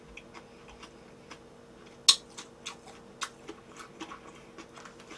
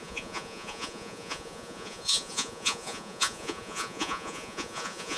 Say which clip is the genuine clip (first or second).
first